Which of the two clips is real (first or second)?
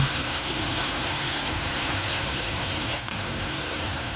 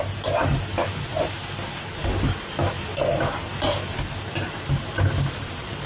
second